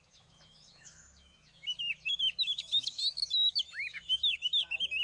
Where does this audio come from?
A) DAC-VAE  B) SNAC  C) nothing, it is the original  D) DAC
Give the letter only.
A